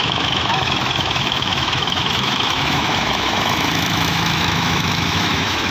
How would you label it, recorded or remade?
remade